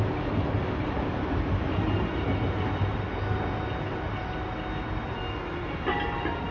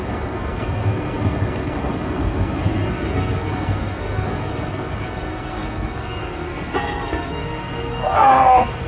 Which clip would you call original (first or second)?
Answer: first